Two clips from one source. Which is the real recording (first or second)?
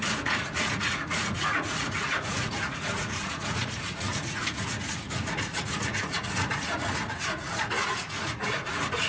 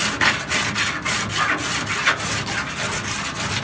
second